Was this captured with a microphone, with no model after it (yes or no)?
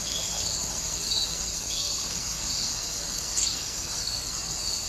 no